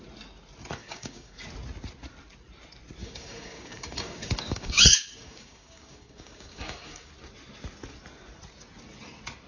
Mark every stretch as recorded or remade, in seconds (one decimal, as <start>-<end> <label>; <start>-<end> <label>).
0.0-0.8 recorded; 0.8-1.4 remade; 1.4-3.0 recorded; 3.0-7.1 remade; 7.1-9.5 recorded